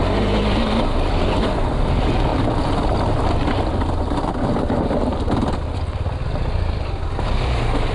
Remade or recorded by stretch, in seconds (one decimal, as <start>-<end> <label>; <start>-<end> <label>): 0.0-7.9 recorded